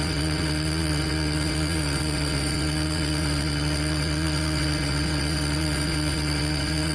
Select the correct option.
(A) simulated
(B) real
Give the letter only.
A